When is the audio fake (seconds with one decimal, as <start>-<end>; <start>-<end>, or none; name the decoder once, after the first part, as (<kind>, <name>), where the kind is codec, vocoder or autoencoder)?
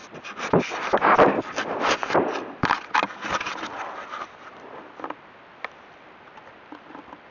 none